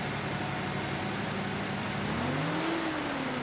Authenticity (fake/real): real